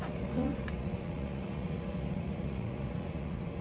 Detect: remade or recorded remade